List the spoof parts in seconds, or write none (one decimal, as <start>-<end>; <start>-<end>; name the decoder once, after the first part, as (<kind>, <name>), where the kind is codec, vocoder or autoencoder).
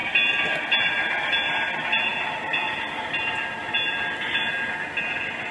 none